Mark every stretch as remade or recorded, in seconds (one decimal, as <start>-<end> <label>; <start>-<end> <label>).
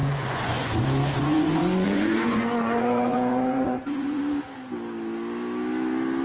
0.0-0.7 remade; 0.7-1.2 recorded; 1.2-4.2 remade; 4.2-6.2 recorded